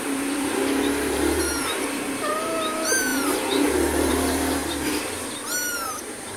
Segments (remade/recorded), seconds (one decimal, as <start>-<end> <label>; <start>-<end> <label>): 0.0-4.6 remade; 4.6-5.7 recorded; 5.7-6.4 remade